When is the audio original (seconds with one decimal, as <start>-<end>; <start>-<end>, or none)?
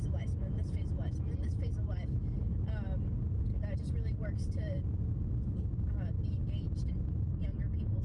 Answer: 0.0-8.0